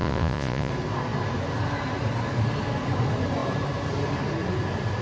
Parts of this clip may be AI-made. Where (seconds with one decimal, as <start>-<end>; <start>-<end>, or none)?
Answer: 0.0-0.7